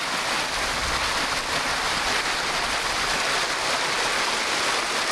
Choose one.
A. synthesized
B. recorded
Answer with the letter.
B